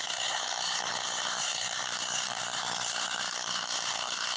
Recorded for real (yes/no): no